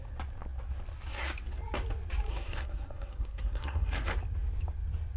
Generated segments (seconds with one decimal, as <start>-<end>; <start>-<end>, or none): 2.3-4.1